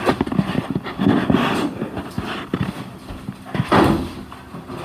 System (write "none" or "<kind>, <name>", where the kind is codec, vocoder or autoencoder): none